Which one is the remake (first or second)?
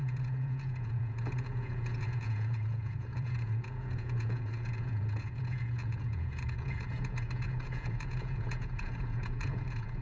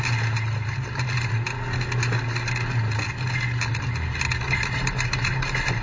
first